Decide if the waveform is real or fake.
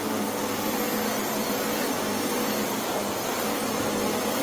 real